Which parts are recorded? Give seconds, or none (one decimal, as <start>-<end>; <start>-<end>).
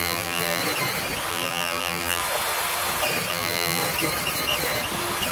0.6-1.3; 2.2-3.3; 3.8-5.3